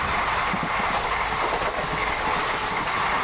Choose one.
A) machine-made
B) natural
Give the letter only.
B